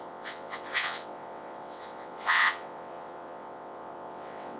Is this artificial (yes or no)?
yes